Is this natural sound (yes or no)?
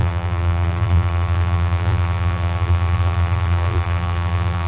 no